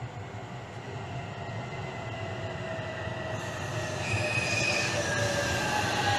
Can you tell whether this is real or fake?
real